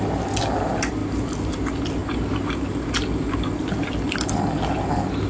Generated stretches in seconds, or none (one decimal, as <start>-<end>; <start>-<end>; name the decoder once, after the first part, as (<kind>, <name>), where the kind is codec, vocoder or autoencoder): none